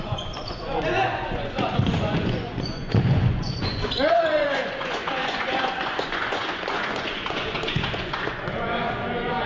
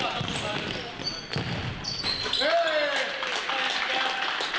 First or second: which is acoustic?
second